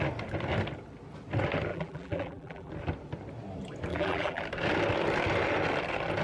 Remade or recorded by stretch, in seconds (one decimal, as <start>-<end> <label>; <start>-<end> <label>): 0.0-1.7 recorded; 1.7-2.7 remade; 2.7-3.9 recorded; 3.9-4.4 remade; 4.4-6.2 recorded